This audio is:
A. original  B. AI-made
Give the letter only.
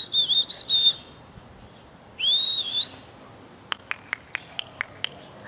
A